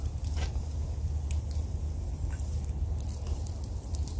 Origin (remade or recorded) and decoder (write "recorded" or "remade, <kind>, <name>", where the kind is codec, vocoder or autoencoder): recorded